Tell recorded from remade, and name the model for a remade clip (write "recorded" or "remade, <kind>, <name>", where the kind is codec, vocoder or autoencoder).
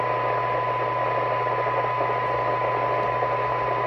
recorded